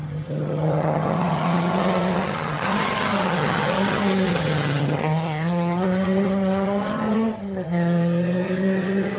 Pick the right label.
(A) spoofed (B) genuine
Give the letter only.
A